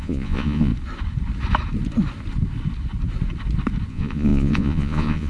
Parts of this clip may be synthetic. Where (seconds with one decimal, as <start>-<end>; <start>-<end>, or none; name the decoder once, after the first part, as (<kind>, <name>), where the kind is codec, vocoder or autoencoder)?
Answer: 0.0-0.7 (vocoder, Vocos); 3.9-5.3